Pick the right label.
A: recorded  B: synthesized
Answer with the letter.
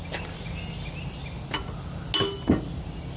A